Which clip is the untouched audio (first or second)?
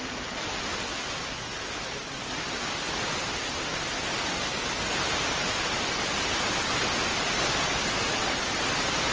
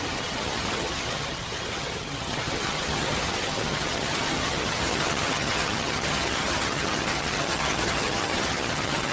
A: first